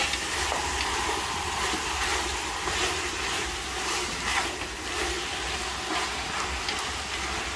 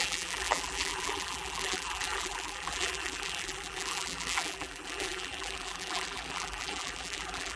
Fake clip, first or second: second